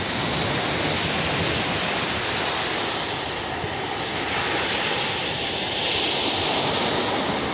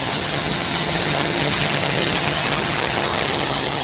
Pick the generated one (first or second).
second